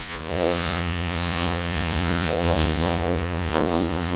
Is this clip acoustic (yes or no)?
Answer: no